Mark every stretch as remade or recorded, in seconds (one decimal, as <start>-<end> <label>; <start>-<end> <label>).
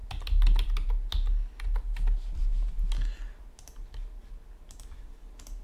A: 0.0-5.6 recorded